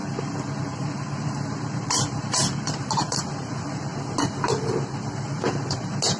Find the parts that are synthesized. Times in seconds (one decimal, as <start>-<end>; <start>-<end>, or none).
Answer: 0.6-3.9; 5.1-6.2

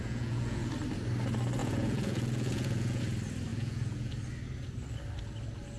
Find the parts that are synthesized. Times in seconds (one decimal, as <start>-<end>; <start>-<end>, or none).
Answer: 0.0-0.7; 1.6-3.0; 3.5-4.1

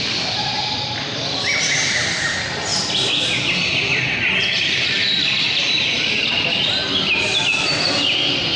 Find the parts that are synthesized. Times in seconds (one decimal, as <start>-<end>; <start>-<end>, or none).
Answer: none

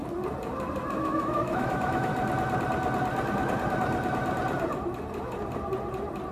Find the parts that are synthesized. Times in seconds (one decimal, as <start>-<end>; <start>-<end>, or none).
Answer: 0.9-2.1

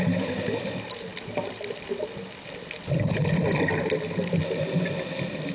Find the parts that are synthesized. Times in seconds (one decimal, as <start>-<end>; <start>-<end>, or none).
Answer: none

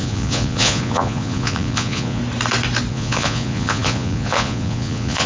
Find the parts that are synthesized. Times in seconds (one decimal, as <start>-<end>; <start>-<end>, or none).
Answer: 0.0-2.2; 2.9-5.3

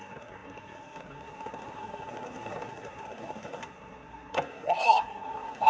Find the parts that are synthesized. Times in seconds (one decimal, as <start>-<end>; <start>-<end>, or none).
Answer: 0.0-5.7

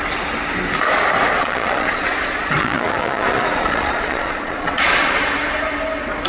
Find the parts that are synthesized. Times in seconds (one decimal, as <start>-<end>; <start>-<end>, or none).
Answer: 1.4-5.2